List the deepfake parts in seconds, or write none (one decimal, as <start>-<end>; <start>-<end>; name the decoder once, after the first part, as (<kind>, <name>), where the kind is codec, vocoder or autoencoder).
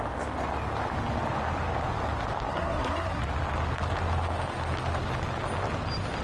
2.5-3.2 (codec, SNAC)